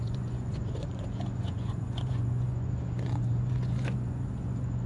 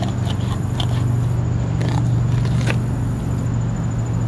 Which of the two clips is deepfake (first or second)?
first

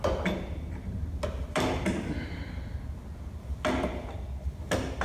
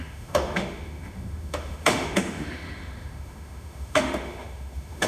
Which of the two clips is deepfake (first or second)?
second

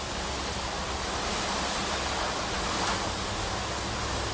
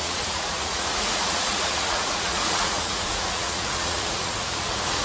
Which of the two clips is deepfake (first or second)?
second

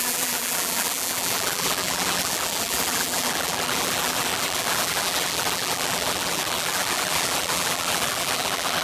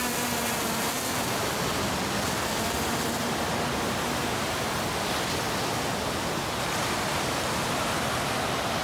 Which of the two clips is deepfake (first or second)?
first